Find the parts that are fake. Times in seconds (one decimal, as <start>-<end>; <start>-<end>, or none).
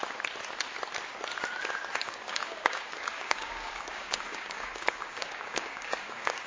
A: 2.0-6.5